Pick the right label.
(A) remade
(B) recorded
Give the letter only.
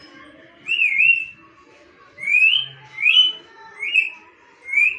B